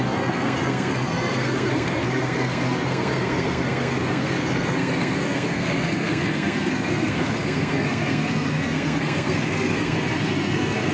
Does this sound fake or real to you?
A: fake